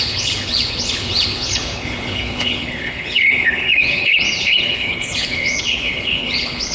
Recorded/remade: remade